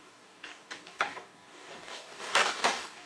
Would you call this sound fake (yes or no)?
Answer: yes